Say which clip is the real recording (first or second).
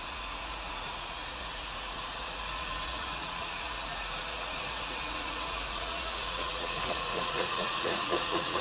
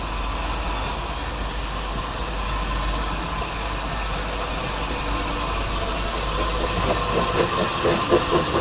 second